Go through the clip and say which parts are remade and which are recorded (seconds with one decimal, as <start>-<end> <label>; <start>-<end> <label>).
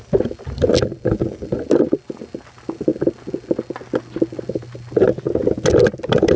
0.0-6.4 recorded